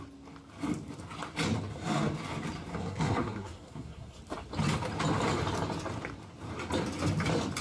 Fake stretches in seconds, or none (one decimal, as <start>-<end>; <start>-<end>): 2.7-4.2